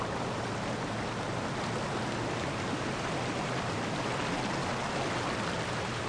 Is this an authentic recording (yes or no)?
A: yes